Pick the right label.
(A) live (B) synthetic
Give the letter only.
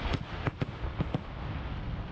A